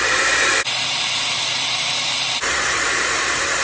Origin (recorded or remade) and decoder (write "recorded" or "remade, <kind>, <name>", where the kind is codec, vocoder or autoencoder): remade, vocoder, BigVGAN v2